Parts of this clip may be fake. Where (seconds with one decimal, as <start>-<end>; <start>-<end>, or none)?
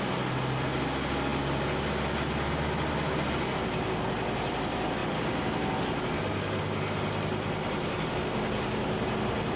none